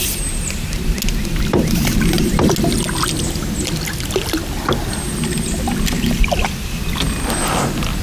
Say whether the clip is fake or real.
real